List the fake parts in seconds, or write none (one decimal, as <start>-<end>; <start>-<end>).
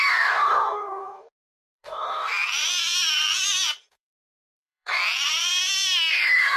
0.0-2.3; 3.9-5.0; 6.1-6.6